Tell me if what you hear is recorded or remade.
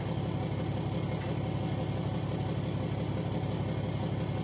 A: recorded